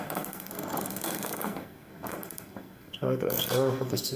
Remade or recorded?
remade